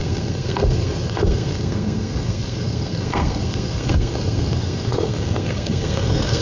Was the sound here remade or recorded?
remade